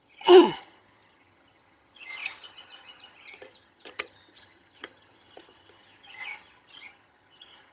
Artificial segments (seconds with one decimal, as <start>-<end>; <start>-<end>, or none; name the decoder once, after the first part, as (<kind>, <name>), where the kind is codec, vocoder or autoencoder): 0.0-7.7 (vocoder, HiFi-GAN)